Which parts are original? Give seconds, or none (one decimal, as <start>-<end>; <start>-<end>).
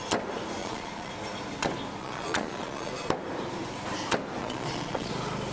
0.0-0.6; 1.1-2.0; 2.9-4.4; 5.1-5.5